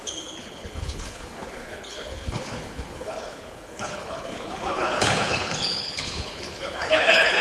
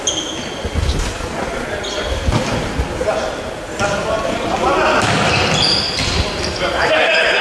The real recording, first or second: second